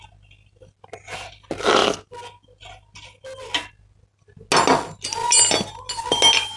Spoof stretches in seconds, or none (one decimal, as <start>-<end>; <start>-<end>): none